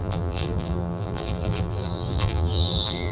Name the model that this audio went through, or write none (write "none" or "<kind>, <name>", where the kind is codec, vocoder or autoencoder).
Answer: vocoder, BigVGAN v2